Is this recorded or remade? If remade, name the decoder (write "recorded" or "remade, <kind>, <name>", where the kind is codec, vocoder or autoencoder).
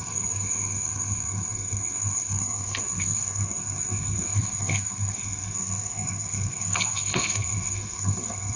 remade, codec, SNAC